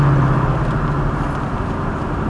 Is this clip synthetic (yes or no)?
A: no